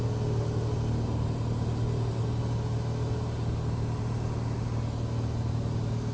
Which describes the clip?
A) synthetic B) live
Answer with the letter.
B